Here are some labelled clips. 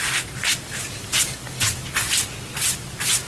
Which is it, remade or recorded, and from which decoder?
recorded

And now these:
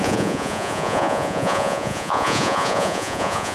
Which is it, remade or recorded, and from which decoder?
remade, vocoder, Vocos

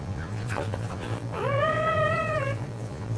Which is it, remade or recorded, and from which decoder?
remade, vocoder, Vocos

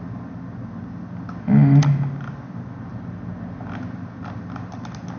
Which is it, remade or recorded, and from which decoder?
recorded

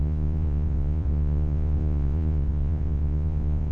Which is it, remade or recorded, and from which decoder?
remade, vocoder, Vocos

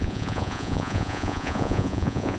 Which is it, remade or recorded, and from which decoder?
remade, vocoder, Vocos